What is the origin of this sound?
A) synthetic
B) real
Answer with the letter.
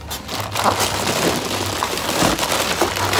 B